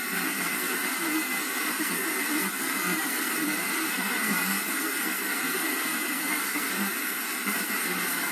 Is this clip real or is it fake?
fake